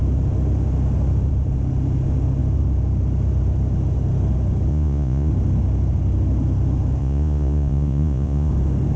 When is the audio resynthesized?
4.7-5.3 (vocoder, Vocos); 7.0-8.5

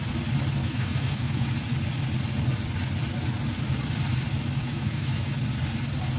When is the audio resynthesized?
0.6-1.5 (autoencoder, DAC-VAE); 4.6-5.4

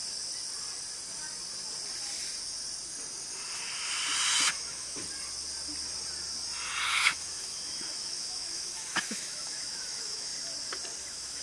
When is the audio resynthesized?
4.5-5.0 (autoencoder, DAC-VAE); 6.9-10.3; 11.0-11.4